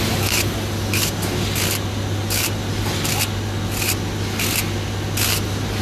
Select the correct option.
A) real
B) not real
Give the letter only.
A